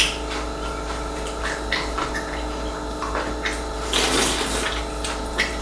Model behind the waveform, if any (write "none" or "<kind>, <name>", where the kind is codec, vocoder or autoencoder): none